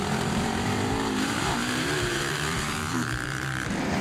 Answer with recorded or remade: remade